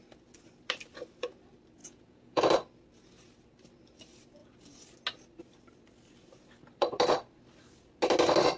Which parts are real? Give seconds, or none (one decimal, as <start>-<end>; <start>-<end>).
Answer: 0.0-1.8; 2.4-8.6

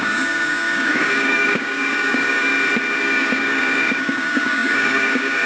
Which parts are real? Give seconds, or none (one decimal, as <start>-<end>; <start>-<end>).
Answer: 2.5-3.0

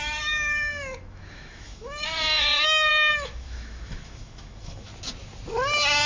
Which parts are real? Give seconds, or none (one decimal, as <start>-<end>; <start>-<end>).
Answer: 4.9-6.1

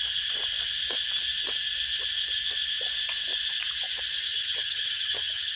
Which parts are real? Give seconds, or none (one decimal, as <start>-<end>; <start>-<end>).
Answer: 0.0-4.3

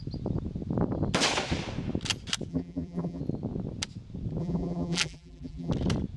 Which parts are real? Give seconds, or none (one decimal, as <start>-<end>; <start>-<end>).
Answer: 0.0-2.5; 3.2-4.4; 5.7-6.2

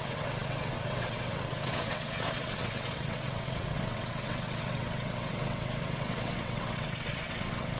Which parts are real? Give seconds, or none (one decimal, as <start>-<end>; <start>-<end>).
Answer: none

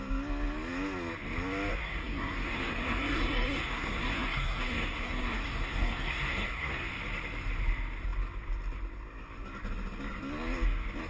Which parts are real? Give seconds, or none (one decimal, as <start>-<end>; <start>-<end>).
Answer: 0.0-1.7; 6.9-11.1

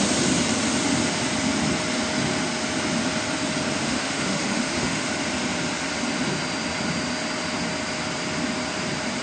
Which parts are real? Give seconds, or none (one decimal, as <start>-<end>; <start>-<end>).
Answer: 0.0-3.8; 5.1-9.2